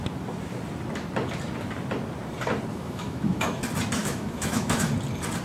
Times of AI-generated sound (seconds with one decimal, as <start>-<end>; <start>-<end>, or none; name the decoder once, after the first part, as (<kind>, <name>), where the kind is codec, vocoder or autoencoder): 2.7-3.6 (autoencoder, DAC-VAE); 4.0-4.9